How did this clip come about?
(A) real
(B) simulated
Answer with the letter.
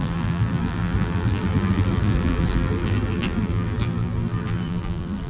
B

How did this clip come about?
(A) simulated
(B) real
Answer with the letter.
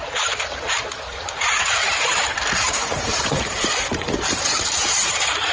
A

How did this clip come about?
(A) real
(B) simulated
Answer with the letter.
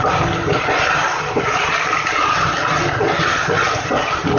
A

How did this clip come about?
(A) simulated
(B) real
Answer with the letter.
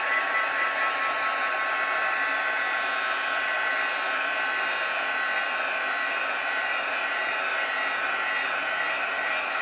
A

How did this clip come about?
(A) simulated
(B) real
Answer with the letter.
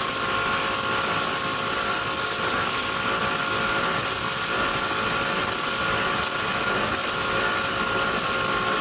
B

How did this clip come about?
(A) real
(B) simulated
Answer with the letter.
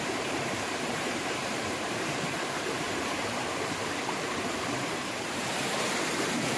B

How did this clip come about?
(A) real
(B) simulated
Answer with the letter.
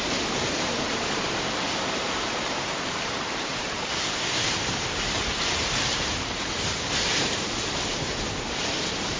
B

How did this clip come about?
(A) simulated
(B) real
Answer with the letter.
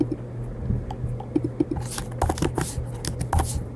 B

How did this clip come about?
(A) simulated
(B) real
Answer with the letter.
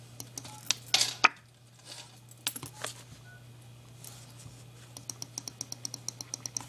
B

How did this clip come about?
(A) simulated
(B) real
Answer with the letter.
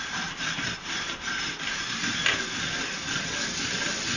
A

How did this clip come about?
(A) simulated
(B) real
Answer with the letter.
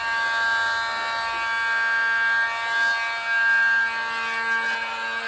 B